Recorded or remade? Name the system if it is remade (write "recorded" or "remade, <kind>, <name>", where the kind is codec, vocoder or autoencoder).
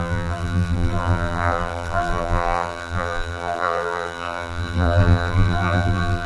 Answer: remade, vocoder, BigVGAN v2